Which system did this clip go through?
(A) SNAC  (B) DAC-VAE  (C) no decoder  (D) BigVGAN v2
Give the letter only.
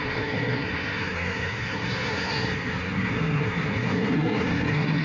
A